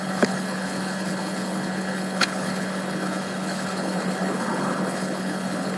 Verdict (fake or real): fake